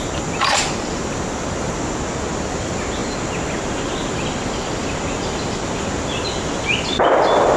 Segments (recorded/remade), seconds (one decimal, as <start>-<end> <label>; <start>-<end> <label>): 0.0-7.6 recorded